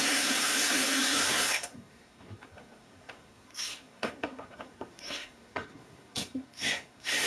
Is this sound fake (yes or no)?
yes